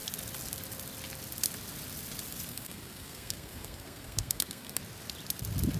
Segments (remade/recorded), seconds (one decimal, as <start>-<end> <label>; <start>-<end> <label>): 0.0-2.5 recorded; 2.5-4.8 remade; 4.8-5.8 recorded